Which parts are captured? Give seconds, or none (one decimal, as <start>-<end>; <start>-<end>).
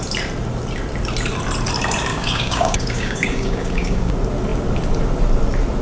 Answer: 0.0-2.1; 4.1-5.8